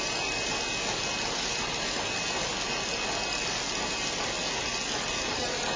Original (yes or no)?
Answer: yes